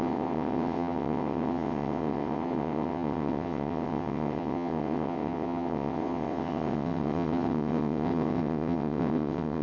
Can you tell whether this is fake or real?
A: fake